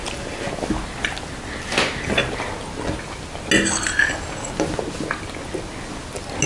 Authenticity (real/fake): real